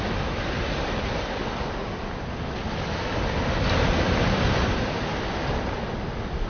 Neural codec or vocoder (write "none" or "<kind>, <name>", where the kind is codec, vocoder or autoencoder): none